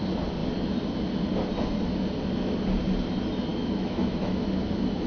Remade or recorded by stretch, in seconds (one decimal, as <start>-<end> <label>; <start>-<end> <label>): 0.0-3.5 recorded; 3.5-4.5 remade; 4.5-5.1 recorded